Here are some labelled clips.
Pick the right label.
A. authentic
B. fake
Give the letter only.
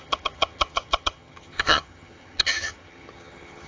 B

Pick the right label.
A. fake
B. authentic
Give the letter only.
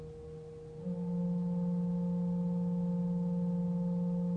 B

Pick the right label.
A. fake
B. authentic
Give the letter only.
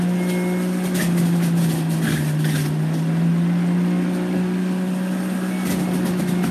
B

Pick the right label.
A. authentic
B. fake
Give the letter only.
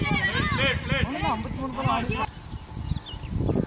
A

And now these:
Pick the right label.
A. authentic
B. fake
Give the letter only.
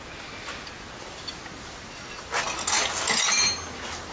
A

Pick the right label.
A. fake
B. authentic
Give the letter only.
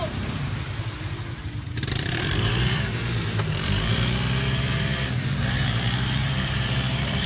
A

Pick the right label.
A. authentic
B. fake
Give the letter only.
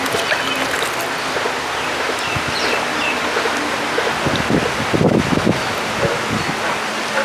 A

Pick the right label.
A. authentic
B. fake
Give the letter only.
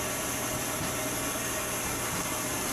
A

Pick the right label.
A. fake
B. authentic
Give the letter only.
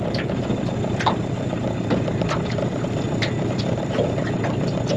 A